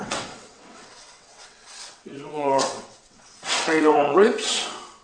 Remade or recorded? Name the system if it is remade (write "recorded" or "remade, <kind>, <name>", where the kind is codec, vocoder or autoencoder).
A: remade, vocoder, WaveNeXt